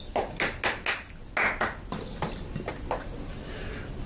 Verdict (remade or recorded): recorded